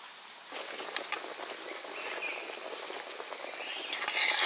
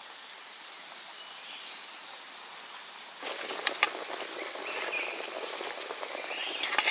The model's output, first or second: second